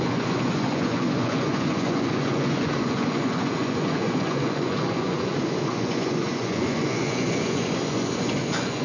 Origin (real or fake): fake